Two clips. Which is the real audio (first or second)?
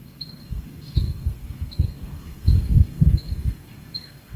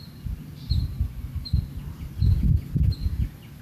second